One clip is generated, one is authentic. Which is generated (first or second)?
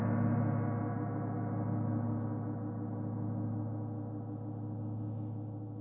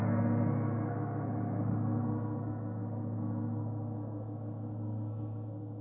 second